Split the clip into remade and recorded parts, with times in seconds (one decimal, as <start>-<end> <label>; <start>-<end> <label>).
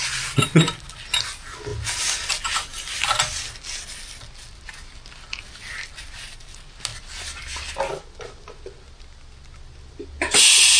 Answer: 0.0-10.8 recorded